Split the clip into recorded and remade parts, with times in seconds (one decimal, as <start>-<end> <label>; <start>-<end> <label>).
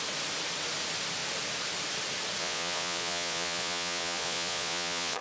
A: 0.0-2.4 recorded; 2.4-5.2 remade